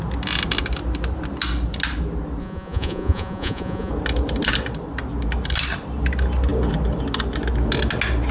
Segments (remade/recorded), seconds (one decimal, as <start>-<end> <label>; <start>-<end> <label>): 0.0-2.4 recorded; 2.4-3.9 remade; 3.9-8.3 recorded